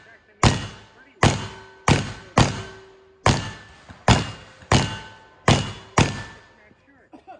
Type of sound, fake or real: real